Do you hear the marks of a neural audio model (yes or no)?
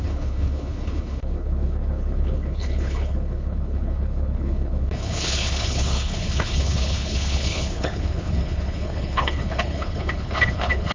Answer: yes